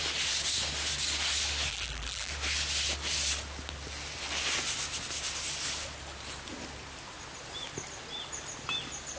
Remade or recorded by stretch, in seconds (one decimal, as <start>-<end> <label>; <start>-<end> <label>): 0.0-1.7 recorded; 1.7-2.3 remade; 2.3-9.2 recorded